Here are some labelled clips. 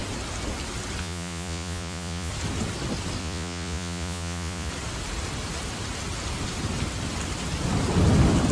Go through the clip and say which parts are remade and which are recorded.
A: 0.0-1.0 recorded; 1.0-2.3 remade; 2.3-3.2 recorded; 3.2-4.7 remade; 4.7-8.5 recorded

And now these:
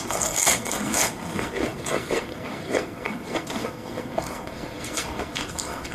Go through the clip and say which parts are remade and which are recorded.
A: 0.0-5.9 remade